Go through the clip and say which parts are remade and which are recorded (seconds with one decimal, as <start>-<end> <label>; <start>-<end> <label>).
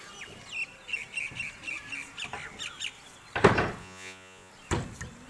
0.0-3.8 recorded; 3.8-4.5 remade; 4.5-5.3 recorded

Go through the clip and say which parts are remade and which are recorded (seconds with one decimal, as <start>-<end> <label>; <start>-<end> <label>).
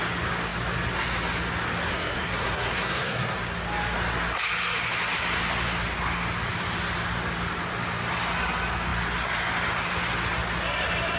0.0-1.9 recorded; 1.9-3.4 remade; 3.4-11.2 recorded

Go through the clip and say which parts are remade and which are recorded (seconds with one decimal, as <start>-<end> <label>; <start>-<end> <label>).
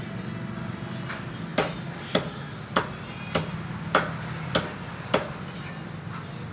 0.0-6.5 recorded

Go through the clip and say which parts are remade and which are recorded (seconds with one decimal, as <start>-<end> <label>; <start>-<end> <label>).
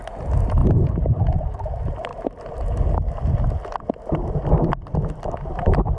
0.0-0.6 recorded; 0.6-1.6 remade; 1.6-6.0 recorded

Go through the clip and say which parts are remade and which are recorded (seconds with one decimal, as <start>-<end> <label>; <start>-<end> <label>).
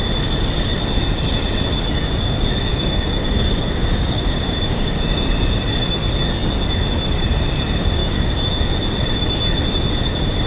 0.0-2.7 recorded; 2.7-5.3 remade; 5.3-8.0 recorded; 8.0-8.6 remade; 8.6-10.5 recorded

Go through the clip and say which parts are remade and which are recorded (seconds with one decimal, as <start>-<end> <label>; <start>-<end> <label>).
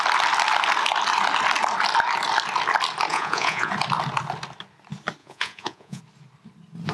0.0-3.1 recorded; 3.1-3.7 remade; 3.7-5.2 recorded; 5.2-6.0 remade; 6.0-6.9 recorded